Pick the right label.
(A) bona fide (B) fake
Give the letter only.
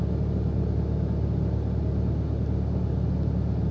A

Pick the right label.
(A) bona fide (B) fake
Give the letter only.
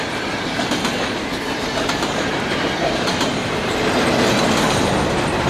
A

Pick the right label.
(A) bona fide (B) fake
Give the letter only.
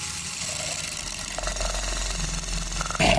A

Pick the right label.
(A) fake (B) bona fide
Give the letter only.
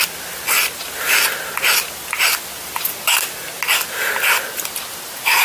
B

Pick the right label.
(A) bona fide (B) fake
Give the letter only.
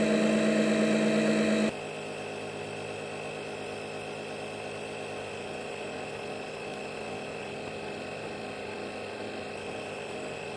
A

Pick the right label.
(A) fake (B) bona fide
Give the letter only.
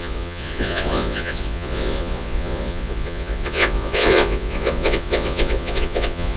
A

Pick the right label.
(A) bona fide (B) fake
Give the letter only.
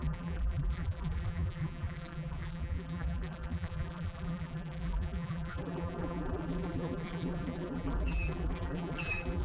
B